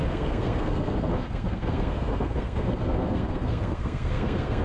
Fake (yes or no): yes